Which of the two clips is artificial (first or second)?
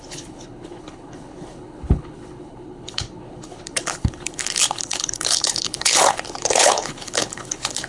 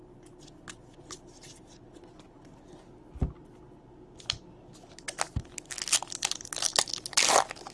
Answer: first